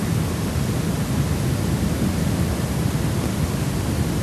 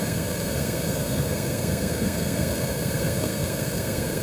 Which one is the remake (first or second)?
second